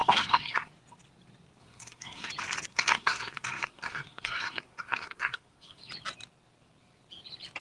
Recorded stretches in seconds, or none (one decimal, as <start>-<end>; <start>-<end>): 0.7-1.6; 2.3-2.7; 5.9-7.6